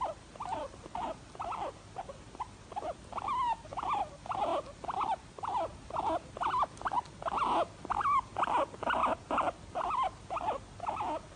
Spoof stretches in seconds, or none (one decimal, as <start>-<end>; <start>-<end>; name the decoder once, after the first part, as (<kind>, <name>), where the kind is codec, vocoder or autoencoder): none